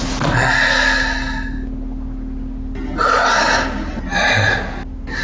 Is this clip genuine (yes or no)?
yes